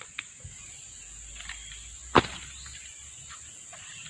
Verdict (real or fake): real